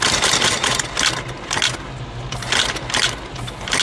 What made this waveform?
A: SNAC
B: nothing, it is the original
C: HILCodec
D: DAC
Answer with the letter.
B